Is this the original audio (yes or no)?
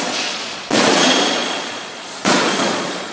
no